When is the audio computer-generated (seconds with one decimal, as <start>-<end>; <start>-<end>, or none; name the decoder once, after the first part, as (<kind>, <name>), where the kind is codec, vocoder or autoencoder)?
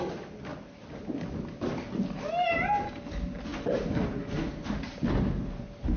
none